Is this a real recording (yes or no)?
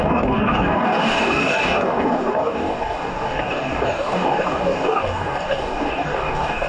no